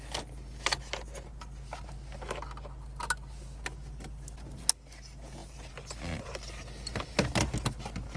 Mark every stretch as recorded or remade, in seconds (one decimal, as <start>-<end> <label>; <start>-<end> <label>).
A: 0.0-8.2 recorded